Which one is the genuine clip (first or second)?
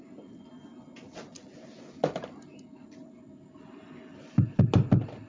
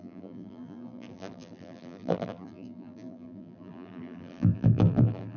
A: first